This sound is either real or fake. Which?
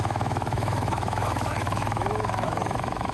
fake